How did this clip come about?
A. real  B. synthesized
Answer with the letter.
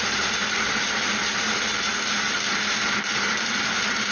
B